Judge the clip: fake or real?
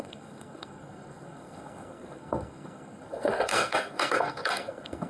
fake